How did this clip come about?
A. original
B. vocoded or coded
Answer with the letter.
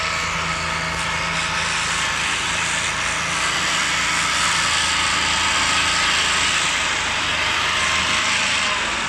A